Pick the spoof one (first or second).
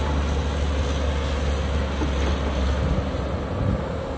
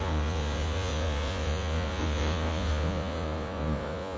second